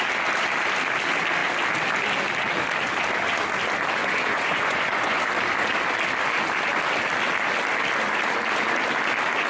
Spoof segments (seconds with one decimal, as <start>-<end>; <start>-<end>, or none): 4.0-5.2

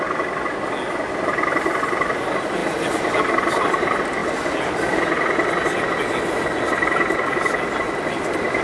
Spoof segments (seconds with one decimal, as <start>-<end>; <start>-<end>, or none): none

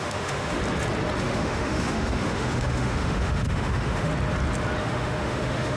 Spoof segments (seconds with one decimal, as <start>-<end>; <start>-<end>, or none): 0.0-0.6; 1.2-4.1; 4.8-5.8

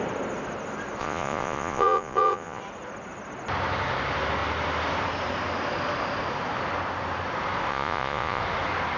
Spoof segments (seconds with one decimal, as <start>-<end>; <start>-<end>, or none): 1.0-2.6; 7.7-8.4

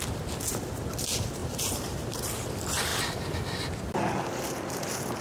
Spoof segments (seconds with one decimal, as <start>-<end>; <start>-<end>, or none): 1.4-2.5

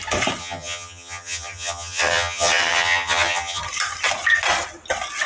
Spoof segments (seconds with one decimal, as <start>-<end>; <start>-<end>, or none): 0.4-3.6

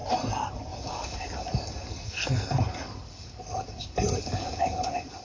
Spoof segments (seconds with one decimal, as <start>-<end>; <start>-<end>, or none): 1.9-2.6

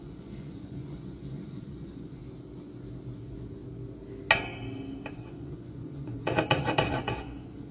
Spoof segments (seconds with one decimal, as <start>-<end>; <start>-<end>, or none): 0.0-2.2; 3.2-3.6; 5.1-7.7